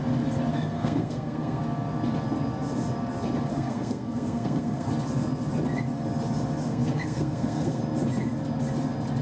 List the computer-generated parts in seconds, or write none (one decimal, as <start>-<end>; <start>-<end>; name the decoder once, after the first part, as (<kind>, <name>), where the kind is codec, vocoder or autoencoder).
0.5-1.6 (codec, SNAC); 3.5-4.9; 6.6-7.8